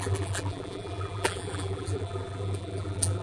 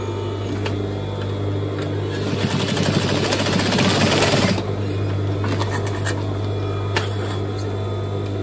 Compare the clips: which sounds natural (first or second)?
second